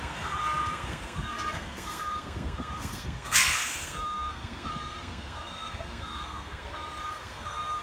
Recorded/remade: remade